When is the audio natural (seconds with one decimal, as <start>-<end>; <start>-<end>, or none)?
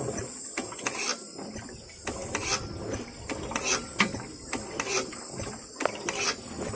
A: 0.0-6.8